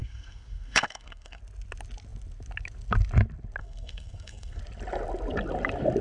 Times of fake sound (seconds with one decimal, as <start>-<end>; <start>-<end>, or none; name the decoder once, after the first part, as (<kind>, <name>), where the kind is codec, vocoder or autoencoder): 0.0-1.4 (codec, SNAC); 3.6-4.6